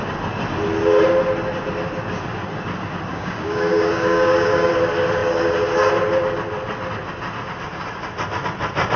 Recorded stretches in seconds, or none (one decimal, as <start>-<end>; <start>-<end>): 0.0-3.1; 4.7-9.0